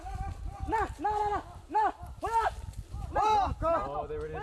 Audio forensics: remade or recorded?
recorded